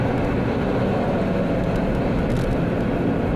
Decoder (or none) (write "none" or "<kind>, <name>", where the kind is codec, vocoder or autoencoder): none